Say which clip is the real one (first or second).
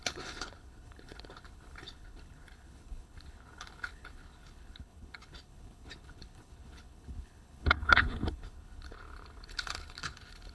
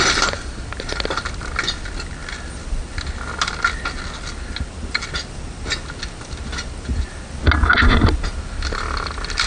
second